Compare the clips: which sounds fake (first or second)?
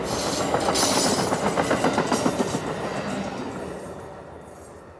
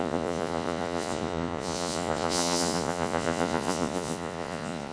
second